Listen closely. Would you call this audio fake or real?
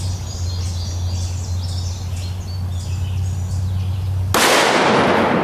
real